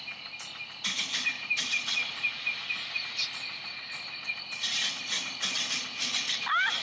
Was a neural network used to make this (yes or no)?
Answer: no